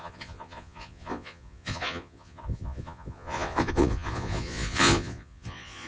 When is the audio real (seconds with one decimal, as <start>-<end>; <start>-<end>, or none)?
none